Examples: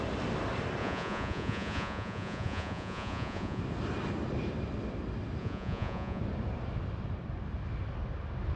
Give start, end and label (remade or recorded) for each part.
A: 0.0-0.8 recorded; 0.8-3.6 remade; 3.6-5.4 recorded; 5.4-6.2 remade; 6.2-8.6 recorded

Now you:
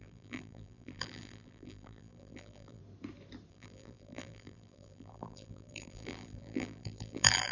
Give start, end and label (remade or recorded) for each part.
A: 0.0-2.8 remade; 2.8-3.5 recorded; 3.5-7.5 remade

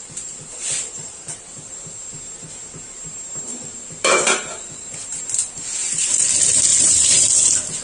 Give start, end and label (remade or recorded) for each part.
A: 0.0-2.1 remade; 2.1-3.5 recorded; 3.5-4.8 remade; 4.8-5.8 recorded; 5.8-6.3 remade; 6.3-6.7 recorded; 6.7-7.3 remade; 7.3-7.8 recorded

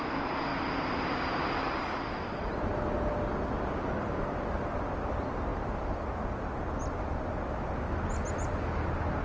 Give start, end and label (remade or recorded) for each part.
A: 0.0-9.2 recorded

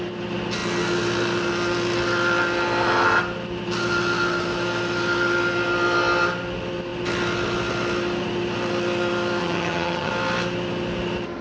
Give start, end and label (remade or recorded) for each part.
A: 0.0-9.4 recorded; 9.4-10.1 remade; 10.1-11.4 recorded

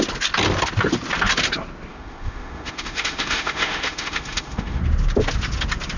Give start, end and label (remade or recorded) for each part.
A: 0.0-1.9 recorded; 1.9-4.8 remade; 4.8-6.0 recorded

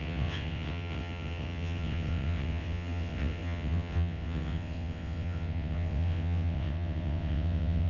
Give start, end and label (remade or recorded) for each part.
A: 0.0-7.9 remade

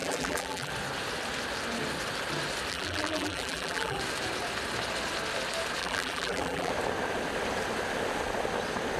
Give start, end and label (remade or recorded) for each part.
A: 0.0-0.7 remade; 0.7-2.7 recorded; 2.7-4.0 remade; 4.0-5.8 recorded; 5.8-6.7 remade; 6.7-9.0 recorded